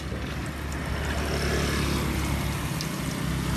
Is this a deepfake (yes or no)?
no